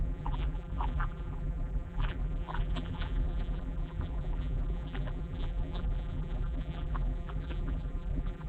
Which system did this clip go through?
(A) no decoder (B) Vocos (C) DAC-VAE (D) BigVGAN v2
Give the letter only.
D